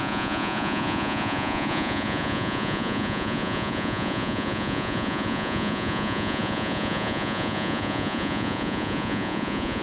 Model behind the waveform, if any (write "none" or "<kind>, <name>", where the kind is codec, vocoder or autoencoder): vocoder, Vocos